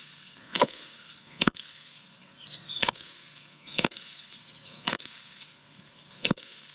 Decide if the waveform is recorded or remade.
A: remade